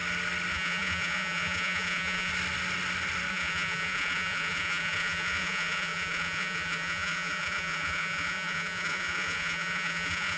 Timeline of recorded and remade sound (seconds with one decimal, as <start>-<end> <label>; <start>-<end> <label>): 0.0-0.5 recorded; 0.5-2.3 remade; 2.3-3.3 recorded; 3.3-10.4 remade